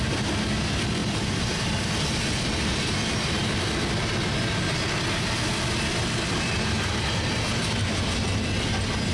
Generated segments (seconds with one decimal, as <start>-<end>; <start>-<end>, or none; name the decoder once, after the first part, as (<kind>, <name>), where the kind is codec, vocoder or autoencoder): 1.0-1.8 (vocoder, BigVGAN v2)